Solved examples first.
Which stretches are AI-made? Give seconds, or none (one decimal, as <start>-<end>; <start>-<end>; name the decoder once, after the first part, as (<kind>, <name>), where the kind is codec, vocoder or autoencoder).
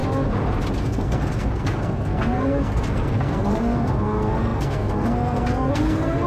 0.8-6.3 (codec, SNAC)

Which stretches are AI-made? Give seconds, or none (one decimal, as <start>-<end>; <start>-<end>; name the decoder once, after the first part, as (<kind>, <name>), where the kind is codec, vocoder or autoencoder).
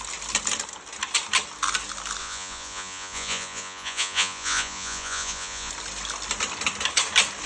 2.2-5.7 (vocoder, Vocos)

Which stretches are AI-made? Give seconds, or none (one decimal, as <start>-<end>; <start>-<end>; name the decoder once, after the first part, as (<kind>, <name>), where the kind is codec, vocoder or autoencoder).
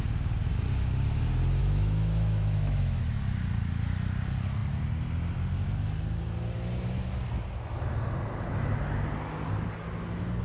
1.6-3.0 (autoencoder, DAC-VAE)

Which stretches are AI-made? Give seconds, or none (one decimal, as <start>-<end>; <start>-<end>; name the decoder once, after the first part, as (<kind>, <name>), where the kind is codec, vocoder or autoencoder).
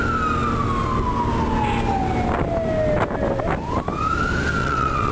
4.6-5.1 (vocoder, WaveNeXt)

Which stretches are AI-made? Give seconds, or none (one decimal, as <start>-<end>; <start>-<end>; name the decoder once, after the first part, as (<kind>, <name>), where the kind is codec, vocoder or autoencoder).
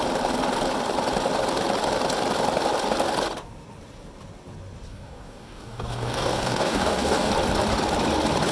4.9-7.3 (codec, DAC)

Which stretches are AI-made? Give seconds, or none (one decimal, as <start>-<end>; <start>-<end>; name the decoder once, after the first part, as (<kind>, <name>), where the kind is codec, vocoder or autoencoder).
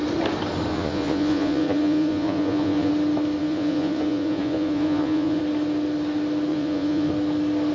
0.7-2.9 (vocoder, Vocos); 3.4-5.4; 6.5-7.1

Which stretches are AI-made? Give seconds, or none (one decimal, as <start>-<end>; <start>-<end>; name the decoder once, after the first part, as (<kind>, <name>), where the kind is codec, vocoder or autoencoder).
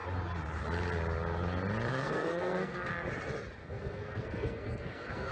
1.9-2.9 (codec, SNAC); 3.6-5.3